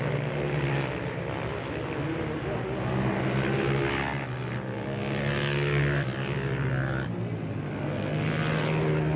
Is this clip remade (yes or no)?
no